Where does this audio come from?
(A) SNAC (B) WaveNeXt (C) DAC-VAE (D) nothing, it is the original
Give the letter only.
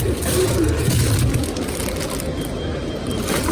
D